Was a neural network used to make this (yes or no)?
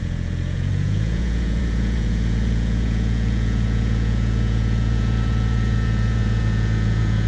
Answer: yes